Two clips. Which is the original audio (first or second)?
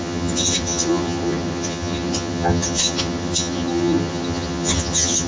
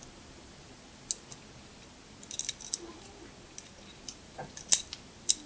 second